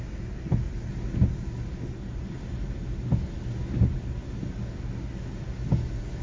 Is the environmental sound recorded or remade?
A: recorded